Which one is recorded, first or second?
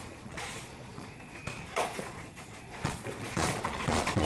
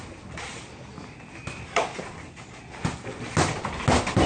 second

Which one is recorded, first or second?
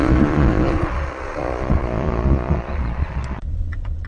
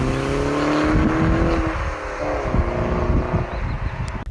second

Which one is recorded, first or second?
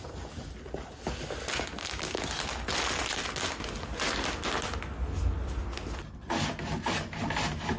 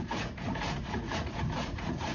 first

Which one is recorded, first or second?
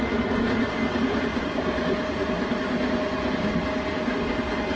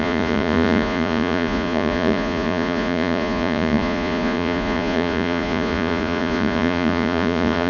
first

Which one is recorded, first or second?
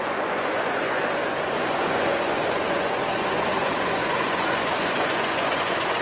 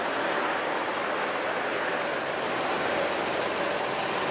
second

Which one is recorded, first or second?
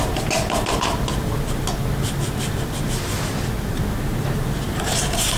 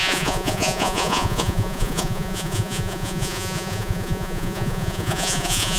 first